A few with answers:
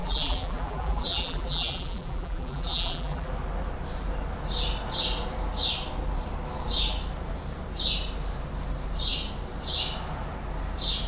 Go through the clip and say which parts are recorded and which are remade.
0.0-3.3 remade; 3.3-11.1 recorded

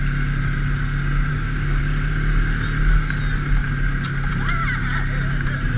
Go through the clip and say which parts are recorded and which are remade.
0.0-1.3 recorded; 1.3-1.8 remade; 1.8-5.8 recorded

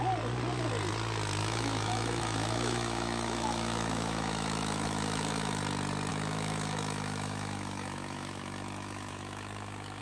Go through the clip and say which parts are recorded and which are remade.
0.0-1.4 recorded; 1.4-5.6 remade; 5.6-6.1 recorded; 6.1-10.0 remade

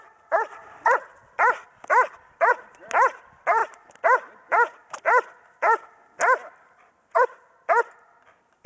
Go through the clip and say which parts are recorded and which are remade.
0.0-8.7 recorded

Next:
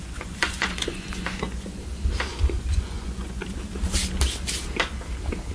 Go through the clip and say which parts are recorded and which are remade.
0.0-1.8 remade; 1.8-2.3 recorded; 2.3-3.4 remade; 3.4-5.5 recorded